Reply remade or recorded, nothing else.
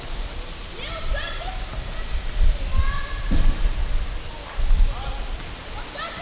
recorded